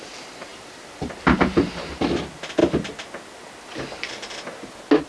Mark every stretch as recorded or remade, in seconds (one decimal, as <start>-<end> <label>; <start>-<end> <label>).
0.0-0.5 recorded; 0.5-1.9 remade; 1.9-5.1 recorded